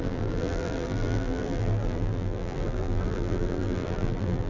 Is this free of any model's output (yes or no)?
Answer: no